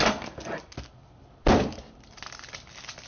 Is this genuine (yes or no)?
yes